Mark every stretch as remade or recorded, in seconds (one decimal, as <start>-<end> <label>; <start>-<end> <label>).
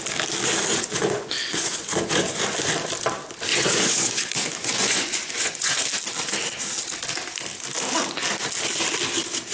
0.0-0.7 recorded; 0.7-2.4 remade; 2.4-3.5 recorded; 3.5-5.8 remade; 5.8-9.5 recorded